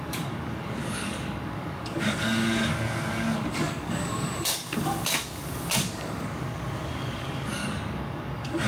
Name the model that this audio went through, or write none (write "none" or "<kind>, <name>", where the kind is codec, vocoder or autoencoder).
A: codec, DAC